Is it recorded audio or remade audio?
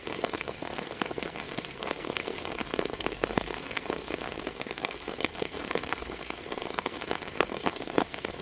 remade